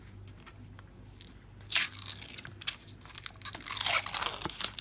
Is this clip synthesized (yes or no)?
no